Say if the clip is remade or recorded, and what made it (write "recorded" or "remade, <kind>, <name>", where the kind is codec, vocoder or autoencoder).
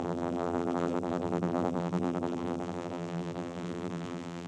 remade, vocoder, BigVGAN v2